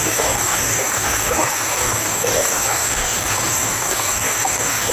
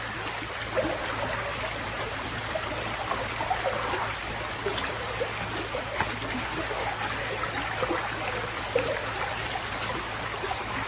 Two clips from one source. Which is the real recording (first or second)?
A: second